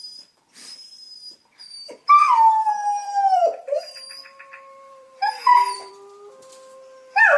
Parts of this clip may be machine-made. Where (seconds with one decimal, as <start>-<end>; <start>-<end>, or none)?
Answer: 3.0-5.9

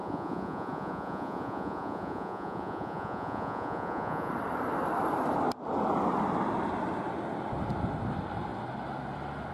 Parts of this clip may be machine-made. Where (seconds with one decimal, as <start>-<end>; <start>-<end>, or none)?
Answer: 0.0-4.3